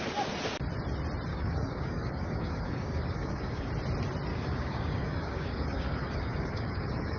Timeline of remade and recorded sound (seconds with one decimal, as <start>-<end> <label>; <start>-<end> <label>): 0.0-1.3 recorded; 1.3-3.7 remade; 3.7-4.3 recorded; 4.3-7.2 remade